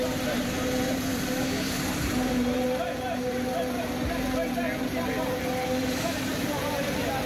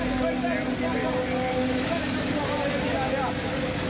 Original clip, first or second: second